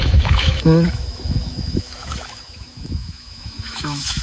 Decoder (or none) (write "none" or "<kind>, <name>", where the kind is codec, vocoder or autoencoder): autoencoder, DAC-VAE